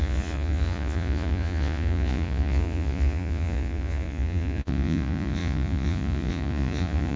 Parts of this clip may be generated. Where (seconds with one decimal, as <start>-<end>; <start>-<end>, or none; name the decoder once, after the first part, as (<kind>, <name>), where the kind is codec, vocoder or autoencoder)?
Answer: 0.0-7.2 (vocoder, Vocos)